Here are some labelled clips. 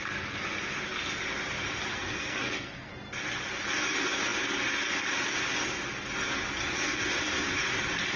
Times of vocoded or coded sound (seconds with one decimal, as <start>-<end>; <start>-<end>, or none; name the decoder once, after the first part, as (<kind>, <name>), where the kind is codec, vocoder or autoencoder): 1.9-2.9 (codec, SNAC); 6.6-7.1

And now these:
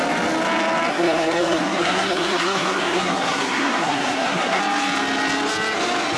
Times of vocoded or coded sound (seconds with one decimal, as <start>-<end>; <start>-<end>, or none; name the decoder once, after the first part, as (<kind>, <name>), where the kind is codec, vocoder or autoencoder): 0.9-4.6 (codec, SNAC)

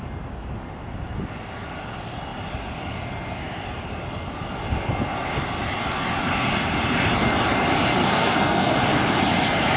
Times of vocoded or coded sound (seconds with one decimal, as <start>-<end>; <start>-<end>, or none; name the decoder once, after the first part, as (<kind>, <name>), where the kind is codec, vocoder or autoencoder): 8.0-8.8 (codec, SNAC)